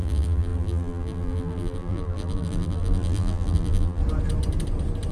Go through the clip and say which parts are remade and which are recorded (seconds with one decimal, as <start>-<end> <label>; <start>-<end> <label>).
0.0-4.0 remade; 4.0-5.1 recorded